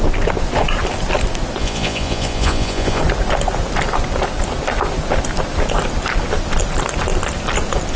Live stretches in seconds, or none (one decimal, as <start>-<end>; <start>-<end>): 0.0-1.6; 3.0-8.0